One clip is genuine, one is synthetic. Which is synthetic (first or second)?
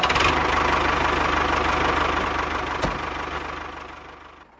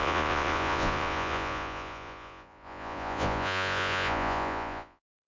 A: second